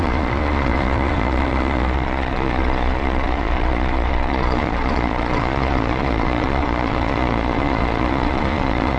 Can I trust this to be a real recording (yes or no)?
no